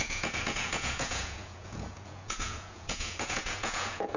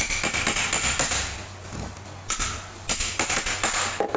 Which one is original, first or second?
second